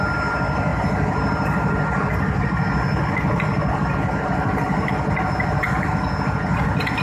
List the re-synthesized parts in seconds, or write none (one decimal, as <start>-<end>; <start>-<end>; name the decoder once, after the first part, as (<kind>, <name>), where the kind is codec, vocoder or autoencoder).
none